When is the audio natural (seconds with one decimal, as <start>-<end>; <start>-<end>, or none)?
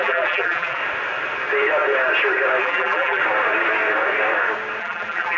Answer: 0.8-2.6; 3.2-4.8